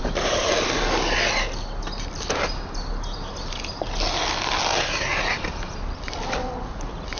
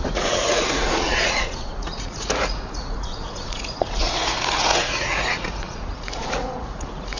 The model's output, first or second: second